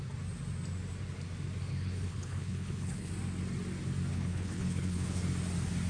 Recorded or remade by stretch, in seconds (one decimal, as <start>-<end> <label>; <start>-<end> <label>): 0.0-1.7 recorded; 1.7-3.1 remade; 3.1-4.1 recorded; 4.1-5.2 remade; 5.2-5.9 recorded